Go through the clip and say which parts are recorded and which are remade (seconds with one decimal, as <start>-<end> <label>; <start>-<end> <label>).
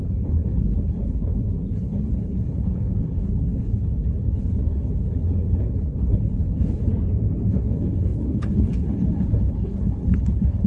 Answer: 0.0-6.9 remade; 6.9-7.5 recorded; 7.5-10.7 remade